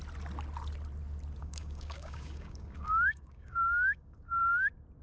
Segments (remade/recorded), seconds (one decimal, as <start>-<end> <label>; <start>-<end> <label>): 0.0-1.4 recorded; 1.4-4.4 remade; 4.4-5.0 recorded